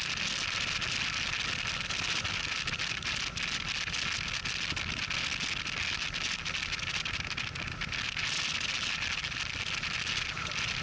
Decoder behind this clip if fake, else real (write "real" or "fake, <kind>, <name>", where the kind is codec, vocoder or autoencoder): real